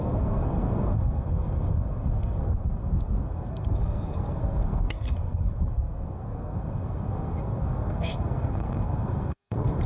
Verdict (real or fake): fake